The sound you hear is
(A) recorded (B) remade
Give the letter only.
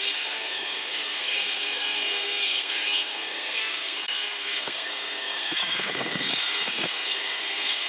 B